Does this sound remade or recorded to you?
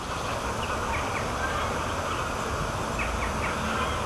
recorded